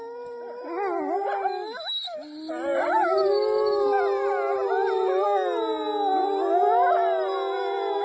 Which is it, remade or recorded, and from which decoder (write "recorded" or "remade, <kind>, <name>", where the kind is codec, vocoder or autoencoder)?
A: recorded